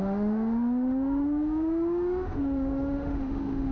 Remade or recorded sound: remade